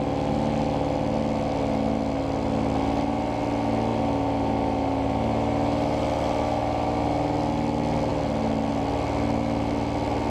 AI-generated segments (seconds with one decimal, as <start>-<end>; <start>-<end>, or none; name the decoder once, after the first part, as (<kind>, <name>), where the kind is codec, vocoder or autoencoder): none